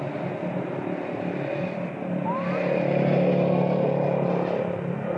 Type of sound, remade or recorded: recorded